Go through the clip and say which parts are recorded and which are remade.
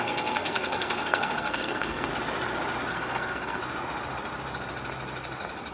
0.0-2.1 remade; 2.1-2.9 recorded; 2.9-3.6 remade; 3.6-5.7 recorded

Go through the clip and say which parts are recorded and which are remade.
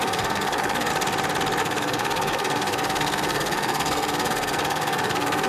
0.0-0.9 remade; 0.9-1.6 recorded; 1.6-5.5 remade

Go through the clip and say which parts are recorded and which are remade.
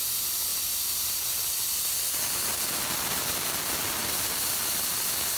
0.0-5.4 recorded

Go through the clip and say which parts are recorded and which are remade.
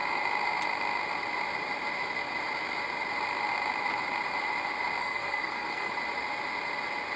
0.0-5.0 recorded; 5.0-5.9 remade; 5.9-7.2 recorded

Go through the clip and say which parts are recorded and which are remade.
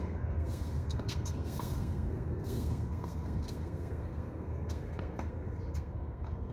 0.0-6.5 remade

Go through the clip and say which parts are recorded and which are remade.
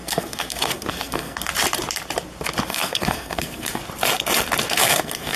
0.0-1.5 remade; 1.5-2.7 recorded; 2.7-3.8 remade; 3.8-4.7 recorded; 4.7-5.4 remade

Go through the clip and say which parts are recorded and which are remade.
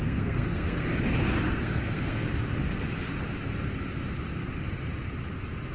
0.0-0.8 remade; 0.8-1.5 recorded; 1.5-2.2 remade; 2.2-5.7 recorded